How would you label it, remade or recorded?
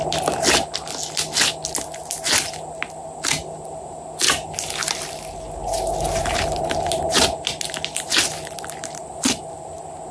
recorded